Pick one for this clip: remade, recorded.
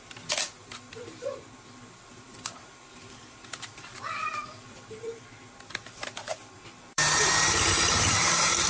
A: remade